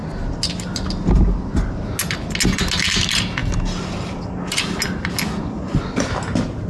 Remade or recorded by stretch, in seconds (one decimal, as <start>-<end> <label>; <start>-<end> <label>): 0.0-6.7 recorded

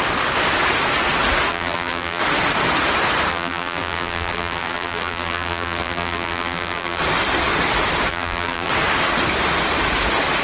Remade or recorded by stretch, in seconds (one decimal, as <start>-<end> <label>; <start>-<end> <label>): 0.0-1.5 recorded; 1.5-2.2 remade; 2.2-3.3 recorded; 3.3-7.0 remade; 7.0-8.1 recorded; 8.1-8.7 remade; 8.7-10.4 recorded